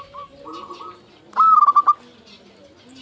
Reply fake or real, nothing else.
real